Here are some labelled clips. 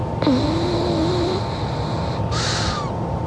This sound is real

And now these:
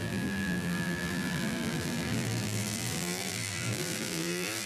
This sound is fake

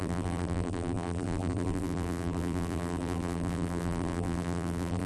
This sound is fake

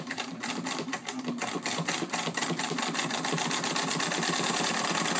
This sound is real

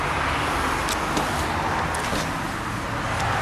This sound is real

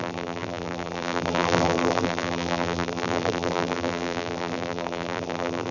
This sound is fake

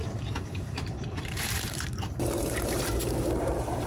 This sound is fake